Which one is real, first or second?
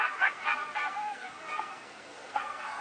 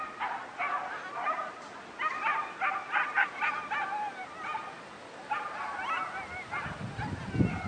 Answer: second